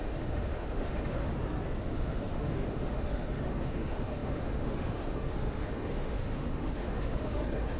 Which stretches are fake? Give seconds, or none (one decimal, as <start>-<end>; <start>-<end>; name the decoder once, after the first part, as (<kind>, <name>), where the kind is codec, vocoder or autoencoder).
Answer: 0.0-1.3 (autoencoder, DAC-VAE); 1.9-7.8